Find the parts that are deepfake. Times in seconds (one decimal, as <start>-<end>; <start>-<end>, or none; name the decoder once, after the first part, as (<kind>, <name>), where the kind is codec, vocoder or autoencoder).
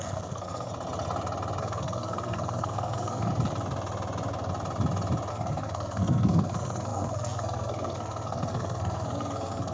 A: 0.0-0.7 (codec, SNAC); 1.6-3.3; 5.3-9.7